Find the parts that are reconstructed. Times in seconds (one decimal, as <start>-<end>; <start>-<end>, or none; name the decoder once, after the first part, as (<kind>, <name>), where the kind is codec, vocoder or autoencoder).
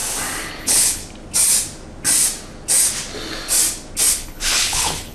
0.6-1.0 (codec, HILCodec); 4.1-5.1